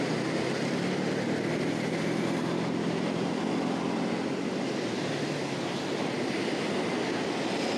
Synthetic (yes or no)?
no